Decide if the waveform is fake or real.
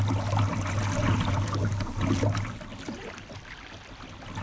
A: real